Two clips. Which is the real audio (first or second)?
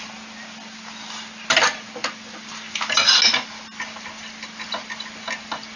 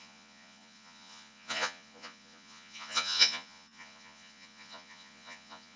first